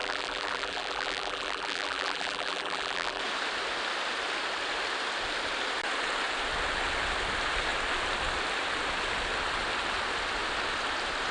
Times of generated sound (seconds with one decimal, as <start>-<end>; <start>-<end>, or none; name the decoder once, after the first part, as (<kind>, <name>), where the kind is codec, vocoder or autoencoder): 0.0-3.2 (vocoder, BigVGAN v2)